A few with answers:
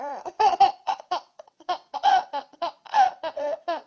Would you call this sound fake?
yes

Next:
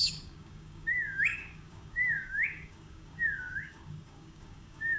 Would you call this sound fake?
yes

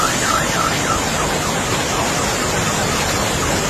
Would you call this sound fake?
no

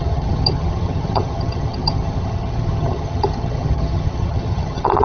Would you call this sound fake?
yes